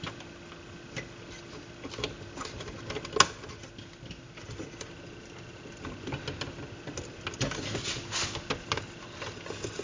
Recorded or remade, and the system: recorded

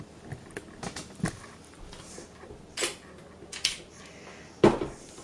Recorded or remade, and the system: recorded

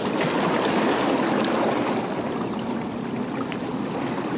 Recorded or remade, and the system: recorded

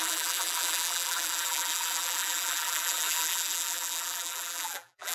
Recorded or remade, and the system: remade, vocoder, BigVGAN v2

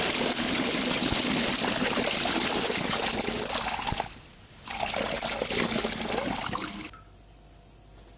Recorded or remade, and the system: recorded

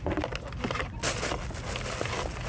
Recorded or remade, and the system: recorded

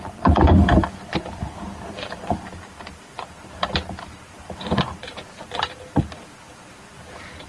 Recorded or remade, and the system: remade, vocoder, BigVGAN v2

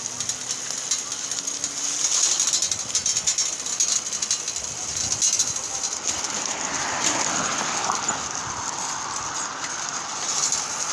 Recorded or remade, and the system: recorded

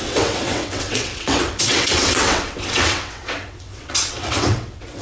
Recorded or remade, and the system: remade, vocoder, WaveNeXt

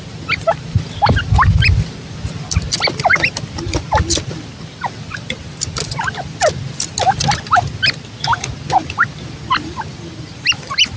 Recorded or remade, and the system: recorded